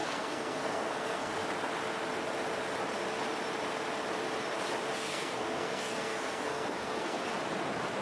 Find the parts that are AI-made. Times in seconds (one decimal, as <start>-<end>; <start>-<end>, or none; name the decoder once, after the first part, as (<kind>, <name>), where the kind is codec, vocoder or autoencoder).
0.0-1.3 (codec, SNAC); 5.0-7.2